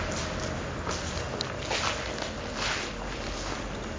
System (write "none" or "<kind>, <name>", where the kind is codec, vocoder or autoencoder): none